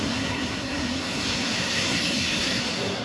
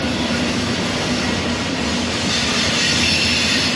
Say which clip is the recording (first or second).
second